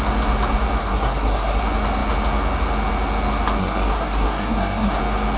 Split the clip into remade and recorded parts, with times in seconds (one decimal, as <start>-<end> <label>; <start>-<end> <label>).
0.0-0.8 recorded; 0.8-1.6 remade; 1.6-3.6 recorded; 3.6-5.0 remade; 5.0-5.4 recorded